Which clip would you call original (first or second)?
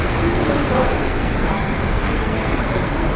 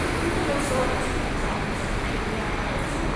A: second